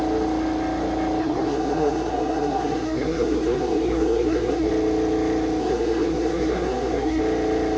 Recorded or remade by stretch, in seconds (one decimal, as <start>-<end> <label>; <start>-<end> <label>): 0.0-1.2 recorded; 1.2-4.7 remade; 4.7-5.6 recorded; 5.6-7.2 remade; 7.2-7.8 recorded